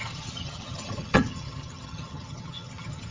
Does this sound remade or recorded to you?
remade